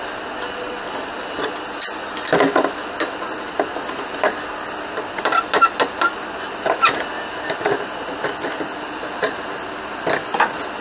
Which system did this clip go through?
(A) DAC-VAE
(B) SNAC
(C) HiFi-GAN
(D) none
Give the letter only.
D